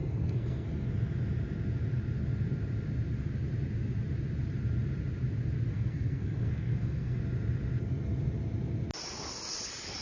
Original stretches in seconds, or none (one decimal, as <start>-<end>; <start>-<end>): 0.7-5.7; 7.2-10.0